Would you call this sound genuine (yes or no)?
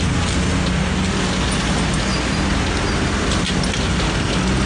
yes